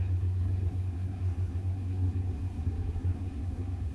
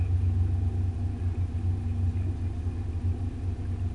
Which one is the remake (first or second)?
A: first